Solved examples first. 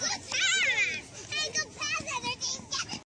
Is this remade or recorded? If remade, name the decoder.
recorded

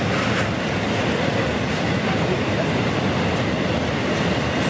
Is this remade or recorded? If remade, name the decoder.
recorded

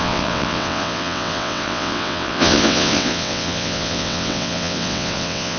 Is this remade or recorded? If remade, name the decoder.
remade, vocoder, WaveNeXt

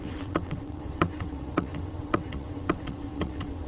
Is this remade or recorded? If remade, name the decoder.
remade, vocoder, WaveNeXt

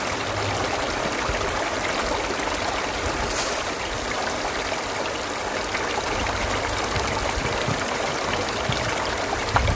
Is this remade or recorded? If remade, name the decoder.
recorded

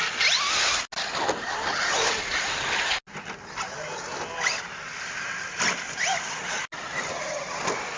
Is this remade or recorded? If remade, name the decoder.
recorded